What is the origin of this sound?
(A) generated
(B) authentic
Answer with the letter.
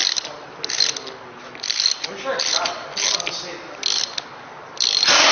B